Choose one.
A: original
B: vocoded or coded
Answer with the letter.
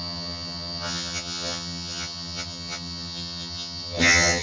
B